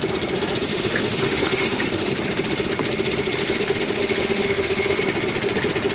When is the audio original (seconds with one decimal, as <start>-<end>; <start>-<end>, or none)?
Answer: 0.0-0.7; 2.1-3.4; 5.0-5.9